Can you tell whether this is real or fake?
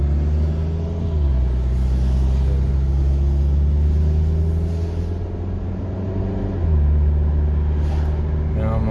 real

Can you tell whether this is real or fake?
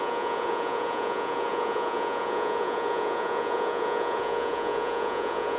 fake